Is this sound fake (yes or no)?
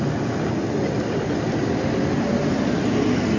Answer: no